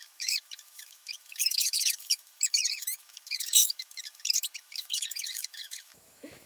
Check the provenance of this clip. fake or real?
fake